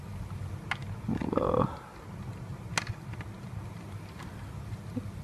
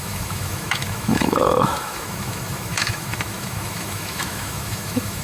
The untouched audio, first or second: first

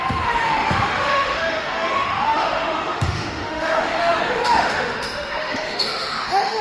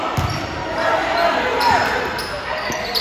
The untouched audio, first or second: second